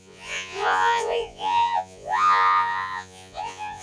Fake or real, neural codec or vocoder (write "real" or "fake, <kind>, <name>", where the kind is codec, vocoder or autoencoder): fake, vocoder, Vocos